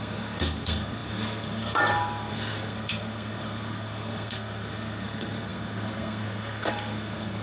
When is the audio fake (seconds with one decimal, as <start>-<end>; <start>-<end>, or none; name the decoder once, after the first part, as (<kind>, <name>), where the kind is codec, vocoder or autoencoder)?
0.0-7.4 (codec, SNAC)

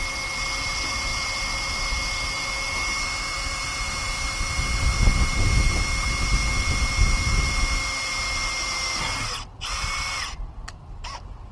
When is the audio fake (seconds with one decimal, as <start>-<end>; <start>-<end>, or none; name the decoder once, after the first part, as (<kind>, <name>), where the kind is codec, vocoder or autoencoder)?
none

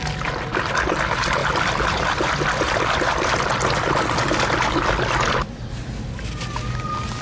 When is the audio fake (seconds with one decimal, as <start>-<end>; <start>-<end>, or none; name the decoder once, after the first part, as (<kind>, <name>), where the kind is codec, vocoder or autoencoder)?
none

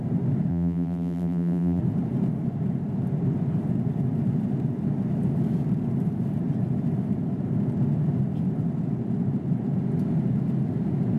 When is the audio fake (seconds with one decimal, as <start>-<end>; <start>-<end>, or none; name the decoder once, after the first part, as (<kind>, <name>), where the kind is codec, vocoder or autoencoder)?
0.5-1.8 (vocoder, BigVGAN v2)